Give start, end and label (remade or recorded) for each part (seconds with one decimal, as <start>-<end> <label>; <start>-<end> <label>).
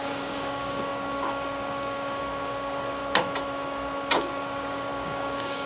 0.0-3.0 remade; 3.0-4.2 recorded; 4.2-5.7 remade